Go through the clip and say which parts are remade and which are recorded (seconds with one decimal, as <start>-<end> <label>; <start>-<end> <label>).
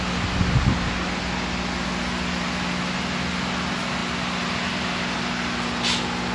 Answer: 0.0-6.3 recorded